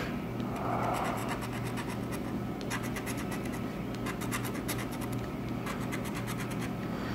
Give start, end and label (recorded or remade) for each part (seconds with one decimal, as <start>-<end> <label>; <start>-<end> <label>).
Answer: 0.0-7.1 recorded